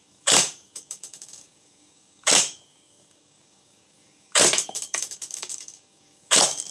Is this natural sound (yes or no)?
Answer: no